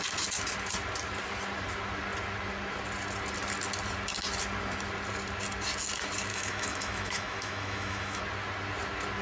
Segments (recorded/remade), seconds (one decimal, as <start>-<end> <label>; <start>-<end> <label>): 0.0-6.3 recorded; 6.3-8.2 remade; 8.2-9.2 recorded